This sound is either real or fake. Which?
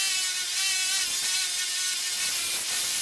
real